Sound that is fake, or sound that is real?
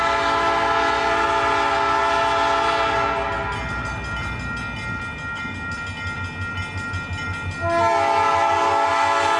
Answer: real